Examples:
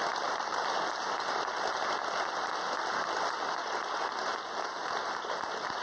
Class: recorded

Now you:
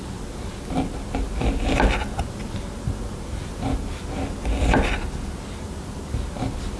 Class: recorded